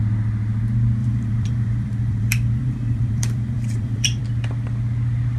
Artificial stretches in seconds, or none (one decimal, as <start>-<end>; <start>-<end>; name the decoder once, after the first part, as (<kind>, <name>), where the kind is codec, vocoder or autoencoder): 1.0-4.2 (vocoder, BigVGAN v2)